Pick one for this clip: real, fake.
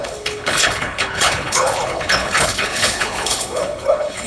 fake